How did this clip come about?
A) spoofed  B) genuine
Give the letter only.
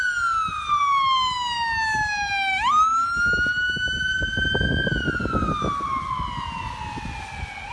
B